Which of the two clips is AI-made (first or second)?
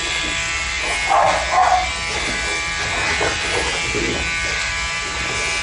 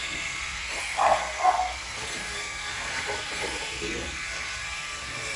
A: second